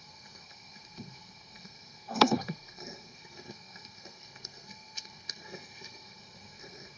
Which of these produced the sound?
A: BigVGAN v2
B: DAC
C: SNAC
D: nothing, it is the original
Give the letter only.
C